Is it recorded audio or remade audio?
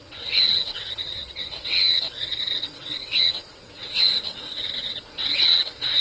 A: remade